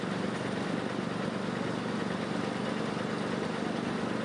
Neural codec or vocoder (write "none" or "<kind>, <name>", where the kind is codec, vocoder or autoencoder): none